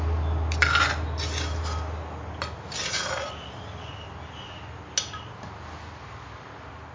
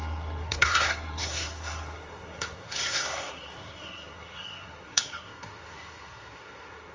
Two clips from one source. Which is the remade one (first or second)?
second